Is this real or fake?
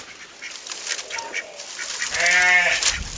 real